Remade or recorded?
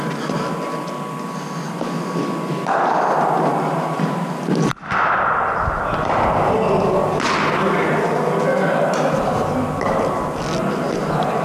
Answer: recorded